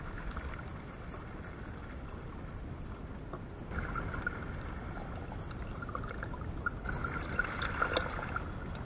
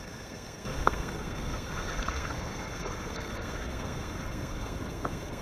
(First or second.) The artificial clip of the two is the second